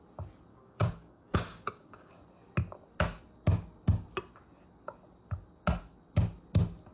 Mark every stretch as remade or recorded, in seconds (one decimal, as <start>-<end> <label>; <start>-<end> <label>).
0.0-0.5 recorded; 0.5-2.1 remade; 2.1-6.9 recorded